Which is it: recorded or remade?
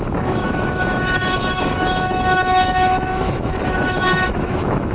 remade